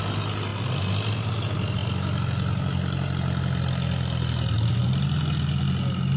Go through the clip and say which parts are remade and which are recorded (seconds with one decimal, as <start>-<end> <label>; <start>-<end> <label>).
0.0-6.2 recorded